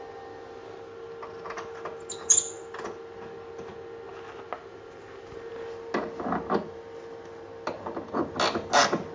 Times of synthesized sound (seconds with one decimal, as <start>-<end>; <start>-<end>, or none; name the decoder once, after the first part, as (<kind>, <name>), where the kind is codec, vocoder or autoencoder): none